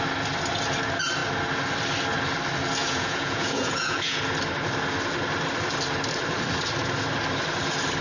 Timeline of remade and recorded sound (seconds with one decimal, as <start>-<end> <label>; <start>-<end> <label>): 0.0-2.8 recorded; 2.8-4.2 remade; 4.2-8.0 recorded